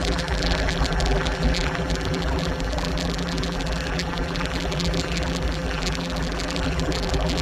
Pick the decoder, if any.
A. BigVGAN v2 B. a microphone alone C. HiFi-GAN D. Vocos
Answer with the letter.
A